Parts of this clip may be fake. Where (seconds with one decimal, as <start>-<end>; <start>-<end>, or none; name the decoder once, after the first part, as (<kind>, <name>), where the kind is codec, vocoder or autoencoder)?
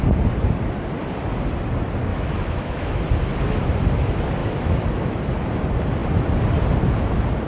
2.1-3.0 (autoencoder, DAC-VAE); 4.4-5.2